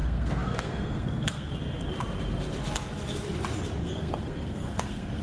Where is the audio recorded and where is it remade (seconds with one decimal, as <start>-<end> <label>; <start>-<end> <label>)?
0.0-1.5 remade; 1.5-3.8 recorded; 3.8-5.2 remade